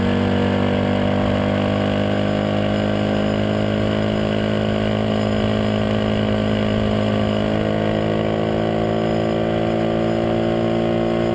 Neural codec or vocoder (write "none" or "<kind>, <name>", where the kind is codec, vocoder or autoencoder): none